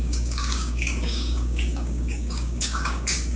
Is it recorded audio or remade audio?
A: remade